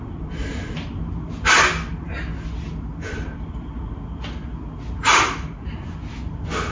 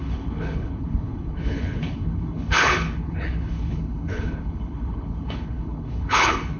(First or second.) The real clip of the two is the first